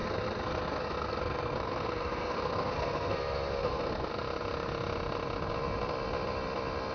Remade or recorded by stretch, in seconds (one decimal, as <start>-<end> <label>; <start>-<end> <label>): 0.0-4.1 remade; 4.1-6.9 recorded